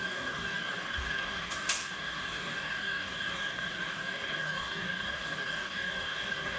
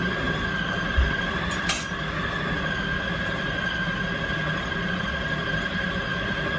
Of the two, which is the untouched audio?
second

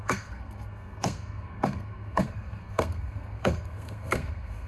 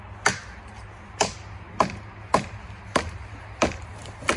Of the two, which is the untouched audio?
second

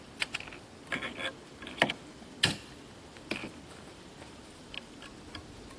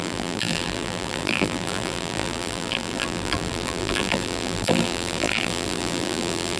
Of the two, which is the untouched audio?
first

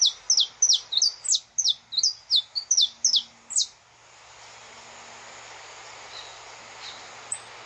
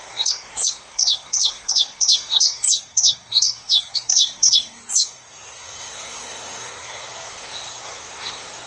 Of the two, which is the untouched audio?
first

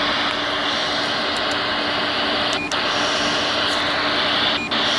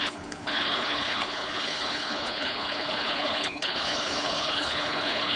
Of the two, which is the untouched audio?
first